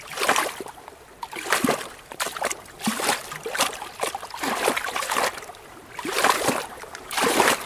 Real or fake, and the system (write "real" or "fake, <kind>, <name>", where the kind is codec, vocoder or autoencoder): real